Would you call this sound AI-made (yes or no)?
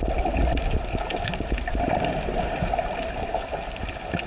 no